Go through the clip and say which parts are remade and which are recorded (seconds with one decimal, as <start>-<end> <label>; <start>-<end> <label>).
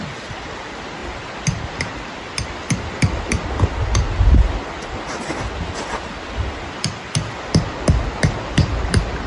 0.0-9.3 recorded